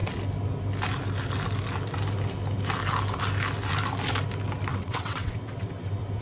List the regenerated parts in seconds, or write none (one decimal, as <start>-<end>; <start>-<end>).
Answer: 4.7-5.3

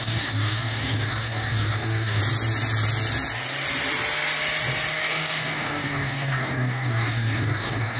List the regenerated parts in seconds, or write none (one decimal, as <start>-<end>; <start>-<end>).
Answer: 0.0-2.2; 4.9-8.0

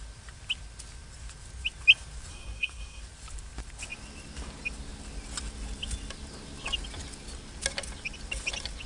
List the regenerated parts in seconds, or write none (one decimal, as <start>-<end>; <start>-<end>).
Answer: 2.3-3.0

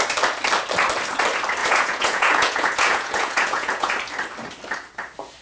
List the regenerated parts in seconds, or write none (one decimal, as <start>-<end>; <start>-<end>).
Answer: 1.6-3.9

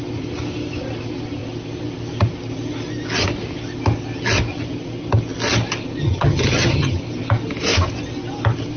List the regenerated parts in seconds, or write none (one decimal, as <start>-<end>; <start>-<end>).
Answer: 6.0-7.0